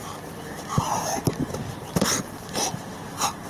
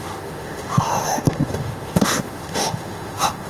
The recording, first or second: first